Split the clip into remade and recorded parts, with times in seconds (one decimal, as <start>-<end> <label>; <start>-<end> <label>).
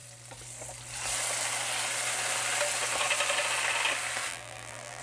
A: 0.0-4.3 recorded; 4.3-5.0 remade